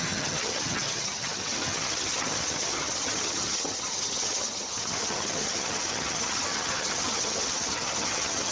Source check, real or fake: fake